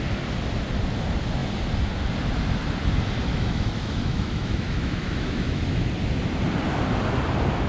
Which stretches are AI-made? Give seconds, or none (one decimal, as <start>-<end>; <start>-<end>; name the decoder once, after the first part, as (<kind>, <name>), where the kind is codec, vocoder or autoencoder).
3.3-5.9 (autoencoder, DAC-VAE)